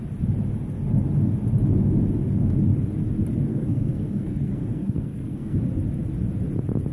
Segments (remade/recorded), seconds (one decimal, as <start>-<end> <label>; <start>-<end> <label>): 0.0-3.5 recorded; 3.5-5.6 remade; 5.6-6.9 recorded